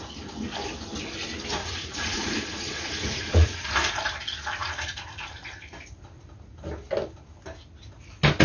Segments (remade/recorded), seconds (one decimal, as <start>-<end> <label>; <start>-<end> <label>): 0.0-1.6 recorded; 1.6-3.6 remade; 3.6-8.4 recorded